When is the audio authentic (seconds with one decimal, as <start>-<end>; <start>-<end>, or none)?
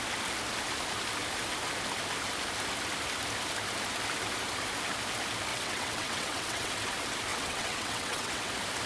0.0-5.5; 6.7-7.3; 8.5-8.9